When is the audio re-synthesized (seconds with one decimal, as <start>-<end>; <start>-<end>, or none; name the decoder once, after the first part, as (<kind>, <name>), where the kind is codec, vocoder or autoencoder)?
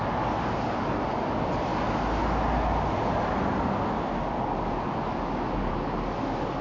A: none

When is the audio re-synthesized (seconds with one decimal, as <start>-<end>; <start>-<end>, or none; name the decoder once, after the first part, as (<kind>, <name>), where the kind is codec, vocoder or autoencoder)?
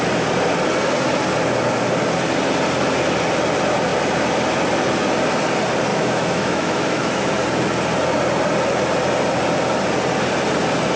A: 5.9-7.3 (autoencoder, DAC-VAE)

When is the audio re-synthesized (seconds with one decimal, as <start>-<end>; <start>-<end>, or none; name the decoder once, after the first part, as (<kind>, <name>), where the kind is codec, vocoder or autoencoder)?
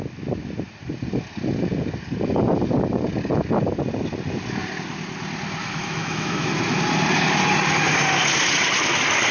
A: 5.6-6.5 (autoencoder, DAC-VAE)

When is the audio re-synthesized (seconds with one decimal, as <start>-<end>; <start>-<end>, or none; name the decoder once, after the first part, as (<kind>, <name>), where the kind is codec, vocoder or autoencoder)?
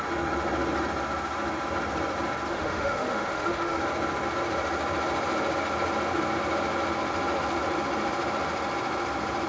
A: 2.5-3.8 (autoencoder, DAC-VAE)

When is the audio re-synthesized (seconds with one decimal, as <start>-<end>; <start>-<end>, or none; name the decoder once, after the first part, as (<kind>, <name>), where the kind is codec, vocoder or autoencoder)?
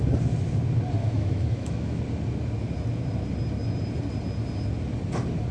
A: 1.0-2.0 (autoencoder, DAC-VAE)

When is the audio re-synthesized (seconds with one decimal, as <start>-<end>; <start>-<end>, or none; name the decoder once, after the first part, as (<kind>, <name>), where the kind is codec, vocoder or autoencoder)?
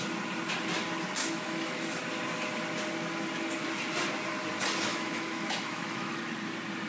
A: 1.2-2.0 (autoencoder, DAC-VAE); 4.9-6.2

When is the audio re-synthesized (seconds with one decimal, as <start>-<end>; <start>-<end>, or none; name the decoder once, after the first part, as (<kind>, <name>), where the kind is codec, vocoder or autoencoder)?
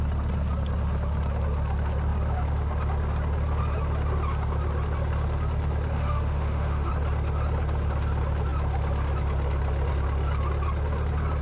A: 5.9-6.9 (autoencoder, DAC-VAE)